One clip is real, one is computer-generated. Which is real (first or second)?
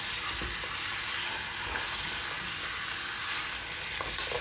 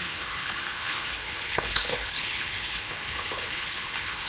first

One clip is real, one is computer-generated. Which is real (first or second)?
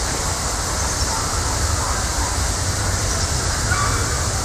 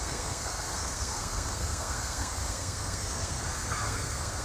first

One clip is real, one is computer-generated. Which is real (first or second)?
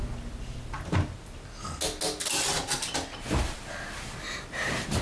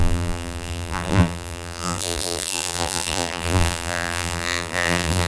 first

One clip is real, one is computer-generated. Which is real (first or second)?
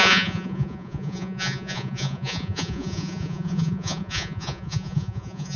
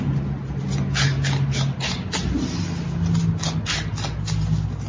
second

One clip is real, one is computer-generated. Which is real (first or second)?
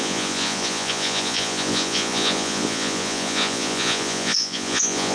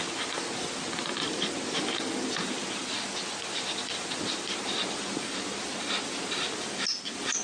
second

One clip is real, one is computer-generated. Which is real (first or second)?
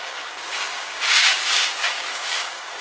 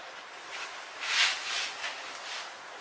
second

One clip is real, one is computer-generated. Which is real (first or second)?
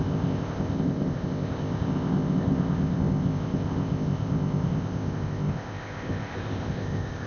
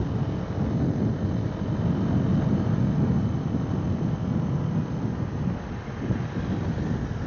second